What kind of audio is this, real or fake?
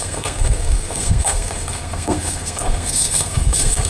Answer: fake